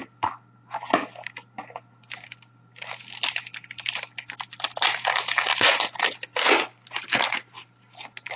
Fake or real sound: real